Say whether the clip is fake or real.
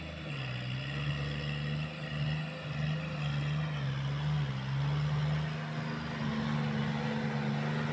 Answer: real